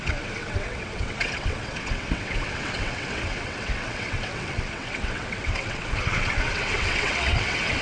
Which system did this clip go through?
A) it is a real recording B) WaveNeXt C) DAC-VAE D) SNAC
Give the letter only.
B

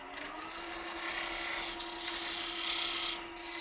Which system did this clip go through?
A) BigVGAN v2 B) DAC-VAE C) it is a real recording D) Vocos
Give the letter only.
C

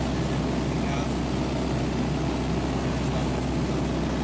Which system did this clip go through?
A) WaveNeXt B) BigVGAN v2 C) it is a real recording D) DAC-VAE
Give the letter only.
C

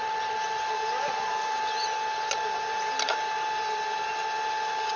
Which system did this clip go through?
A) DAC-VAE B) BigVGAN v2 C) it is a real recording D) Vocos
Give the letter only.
C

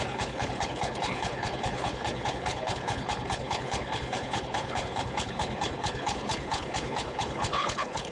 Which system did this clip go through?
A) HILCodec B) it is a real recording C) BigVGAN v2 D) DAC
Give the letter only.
A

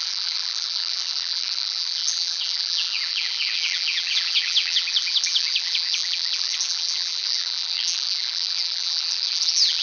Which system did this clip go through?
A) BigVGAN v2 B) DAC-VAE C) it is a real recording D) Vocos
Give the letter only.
A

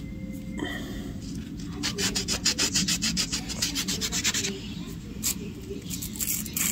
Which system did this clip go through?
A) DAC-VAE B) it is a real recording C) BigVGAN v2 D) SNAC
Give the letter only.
B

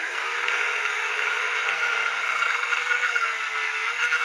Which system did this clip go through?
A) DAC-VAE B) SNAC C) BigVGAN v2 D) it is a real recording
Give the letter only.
B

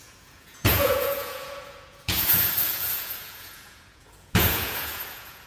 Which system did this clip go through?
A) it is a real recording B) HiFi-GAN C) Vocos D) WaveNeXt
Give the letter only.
C